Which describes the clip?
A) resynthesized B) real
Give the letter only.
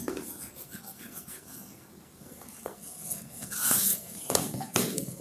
A